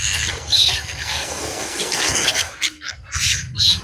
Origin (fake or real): fake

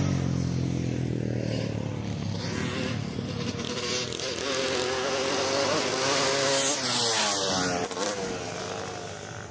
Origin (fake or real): real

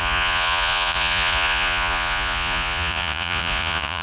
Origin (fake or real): fake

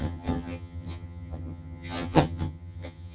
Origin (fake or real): fake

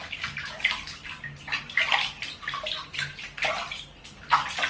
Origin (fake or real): real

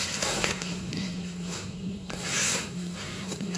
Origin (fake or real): fake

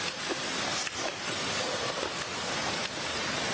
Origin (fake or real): fake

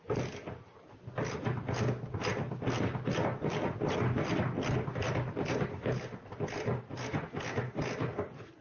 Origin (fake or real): real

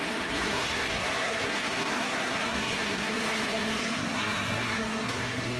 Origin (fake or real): fake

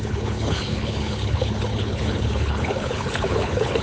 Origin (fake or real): fake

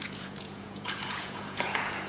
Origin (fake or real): fake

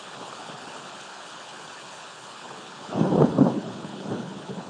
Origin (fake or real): fake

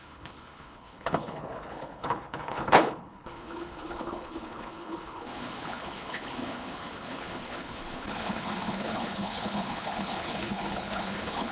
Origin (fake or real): fake